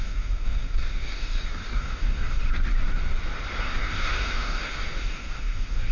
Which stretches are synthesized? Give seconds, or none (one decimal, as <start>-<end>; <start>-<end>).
0.0-2.4; 3.6-5.9